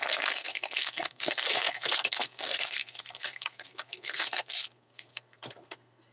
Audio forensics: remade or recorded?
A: remade